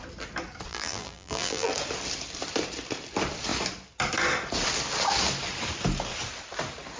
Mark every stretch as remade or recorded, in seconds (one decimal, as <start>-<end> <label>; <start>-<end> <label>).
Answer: 0.0-0.7 recorded; 0.7-1.7 remade; 1.7-7.0 recorded